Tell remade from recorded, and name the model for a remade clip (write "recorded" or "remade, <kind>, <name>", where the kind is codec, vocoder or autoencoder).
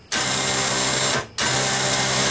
recorded